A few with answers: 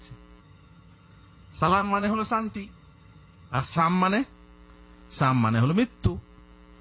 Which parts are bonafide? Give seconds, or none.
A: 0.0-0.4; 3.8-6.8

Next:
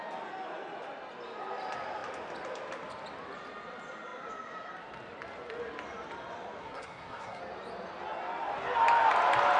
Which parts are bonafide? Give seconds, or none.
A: 0.0-6.6; 7.4-9.6

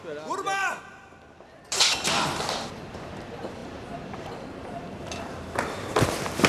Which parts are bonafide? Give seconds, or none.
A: 0.0-0.6; 2.2-3.6; 4.4-6.5

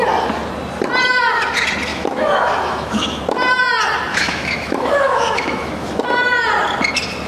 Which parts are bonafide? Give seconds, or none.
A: 0.0-1.9; 3.2-4.1; 6.0-7.3